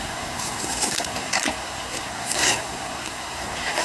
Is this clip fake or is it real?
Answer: fake